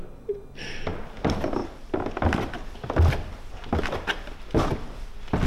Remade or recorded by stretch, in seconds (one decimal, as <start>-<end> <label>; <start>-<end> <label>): 0.0-5.5 recorded